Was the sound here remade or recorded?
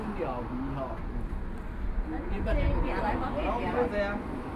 recorded